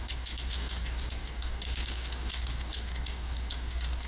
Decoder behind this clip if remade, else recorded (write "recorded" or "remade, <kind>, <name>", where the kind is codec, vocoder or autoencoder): remade, codec, DAC